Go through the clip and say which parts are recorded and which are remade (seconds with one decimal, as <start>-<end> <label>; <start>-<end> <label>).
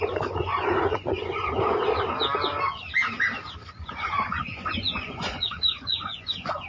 0.0-1.8 remade; 1.8-3.8 recorded; 3.8-6.7 remade